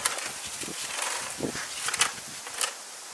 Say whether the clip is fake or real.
real